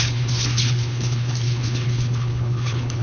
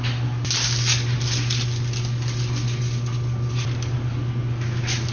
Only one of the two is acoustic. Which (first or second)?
second